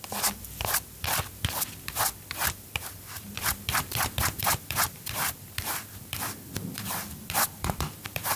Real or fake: fake